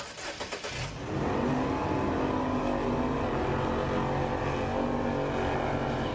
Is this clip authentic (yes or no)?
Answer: yes